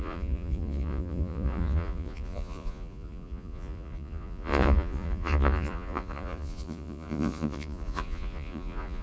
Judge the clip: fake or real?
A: fake